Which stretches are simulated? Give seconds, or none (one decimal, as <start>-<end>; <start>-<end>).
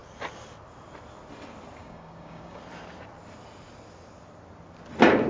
1.8-2.6